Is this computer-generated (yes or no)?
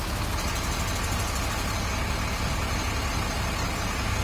no